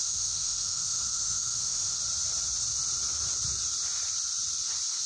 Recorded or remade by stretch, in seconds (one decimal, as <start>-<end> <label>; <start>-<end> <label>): 0.0-2.0 remade; 2.0-5.1 recorded